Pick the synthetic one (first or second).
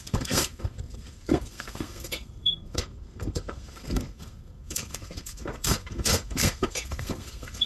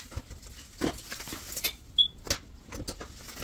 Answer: first